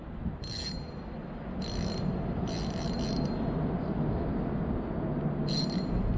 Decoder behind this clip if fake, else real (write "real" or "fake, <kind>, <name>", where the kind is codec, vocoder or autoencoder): real